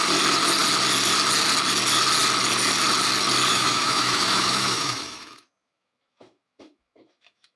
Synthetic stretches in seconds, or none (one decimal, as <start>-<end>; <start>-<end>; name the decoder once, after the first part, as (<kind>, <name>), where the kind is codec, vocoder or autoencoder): 3.5-7.6 (autoencoder, DAC-VAE)